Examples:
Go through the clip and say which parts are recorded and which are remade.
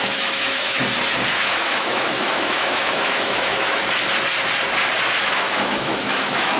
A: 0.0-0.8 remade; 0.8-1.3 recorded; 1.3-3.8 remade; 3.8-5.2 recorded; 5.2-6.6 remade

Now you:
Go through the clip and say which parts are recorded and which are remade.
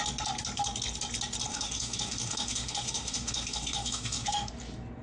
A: 0.0-1.5 recorded; 1.5-4.5 remade; 4.5-5.0 recorded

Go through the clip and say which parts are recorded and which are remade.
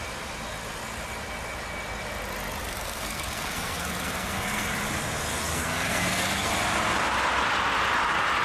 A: 0.0-2.6 recorded; 2.6-4.7 remade; 4.7-5.5 recorded; 5.5-6.5 remade; 6.5-8.4 recorded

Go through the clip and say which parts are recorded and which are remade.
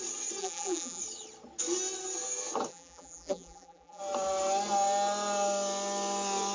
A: 0.0-0.4 recorded; 0.4-1.0 remade; 1.0-2.7 recorded; 2.7-4.0 remade; 4.0-6.5 recorded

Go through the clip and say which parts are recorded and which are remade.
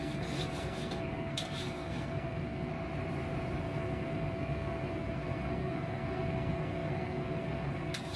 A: 0.0-2.7 remade; 2.7-3.6 recorded; 3.6-8.2 remade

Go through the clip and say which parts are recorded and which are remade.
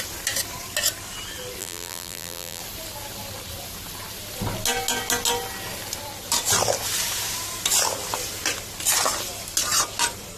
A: 0.0-1.6 recorded; 1.6-2.6 remade; 2.6-10.4 recorded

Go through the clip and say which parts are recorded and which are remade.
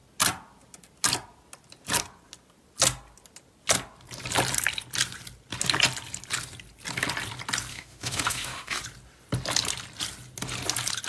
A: 0.0-7.7 recorded; 7.7-8.8 remade; 8.8-11.1 recorded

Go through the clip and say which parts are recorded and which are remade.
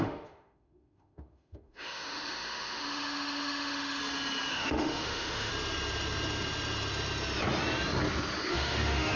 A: 0.0-4.0 remade; 4.0-4.5 recorded; 4.5-5.5 remade; 5.5-8.5 recorded; 8.5-9.2 remade